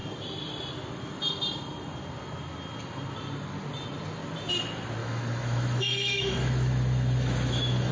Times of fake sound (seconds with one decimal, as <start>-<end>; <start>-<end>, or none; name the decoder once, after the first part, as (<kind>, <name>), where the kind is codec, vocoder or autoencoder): 5.0-7.9 (autoencoder, DAC-VAE)